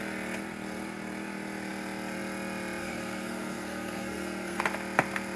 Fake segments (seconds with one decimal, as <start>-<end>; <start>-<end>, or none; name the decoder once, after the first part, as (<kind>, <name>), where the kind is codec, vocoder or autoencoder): 2.8-4.6 (codec, SNAC)